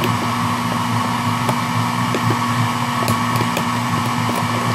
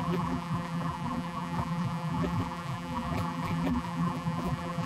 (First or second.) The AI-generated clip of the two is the second